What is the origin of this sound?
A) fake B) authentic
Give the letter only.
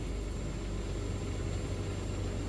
B